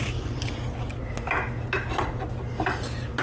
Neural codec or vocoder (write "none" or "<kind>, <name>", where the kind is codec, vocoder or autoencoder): none